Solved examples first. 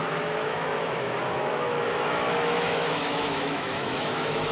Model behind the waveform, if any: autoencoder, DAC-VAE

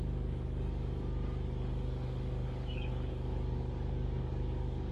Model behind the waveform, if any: codec, DAC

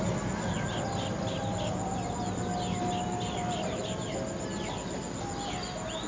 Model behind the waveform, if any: none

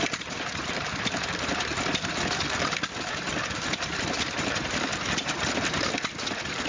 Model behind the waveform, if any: vocoder, BigVGAN v2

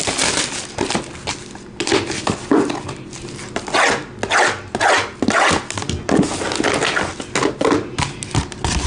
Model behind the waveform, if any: none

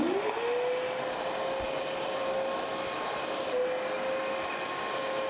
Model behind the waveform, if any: none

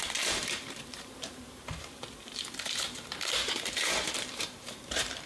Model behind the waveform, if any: vocoder, BigVGAN v2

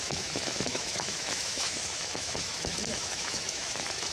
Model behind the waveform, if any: autoencoder, DAC-VAE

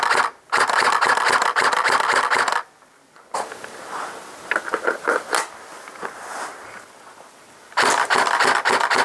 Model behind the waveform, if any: none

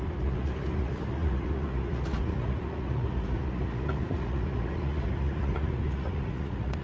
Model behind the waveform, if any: vocoder, Vocos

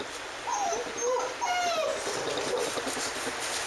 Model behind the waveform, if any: none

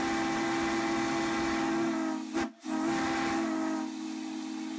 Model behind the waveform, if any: none